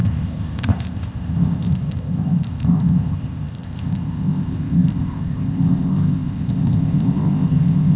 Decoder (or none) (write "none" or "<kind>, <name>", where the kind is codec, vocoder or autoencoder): codec, ZipCodec